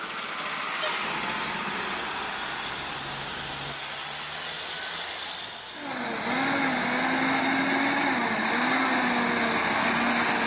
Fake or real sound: real